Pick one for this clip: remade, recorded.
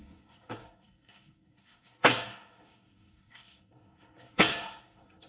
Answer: remade